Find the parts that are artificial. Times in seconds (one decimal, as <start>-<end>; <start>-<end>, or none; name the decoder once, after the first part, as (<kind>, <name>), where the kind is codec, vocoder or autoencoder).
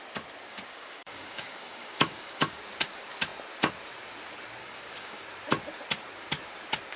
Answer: 0.5-2.6 (codec, DAC); 4.6-5.2